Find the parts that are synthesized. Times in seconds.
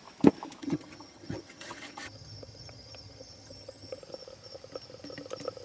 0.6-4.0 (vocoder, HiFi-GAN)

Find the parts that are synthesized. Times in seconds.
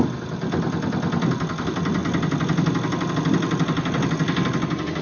none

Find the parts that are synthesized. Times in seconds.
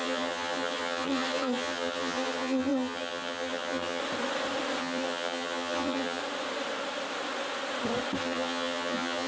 0.0-4.0 (vocoder, HiFi-GAN); 4.8-6.2; 8.2-9.3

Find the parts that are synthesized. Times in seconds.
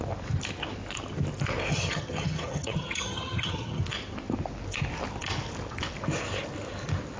1.7-3.8 (vocoder, HiFi-GAN)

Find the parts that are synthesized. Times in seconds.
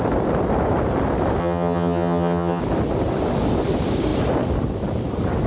1.4-2.6 (vocoder, HiFi-GAN)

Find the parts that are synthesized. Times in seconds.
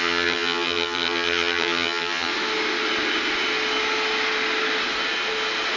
0.0-2.3 (vocoder, HiFi-GAN)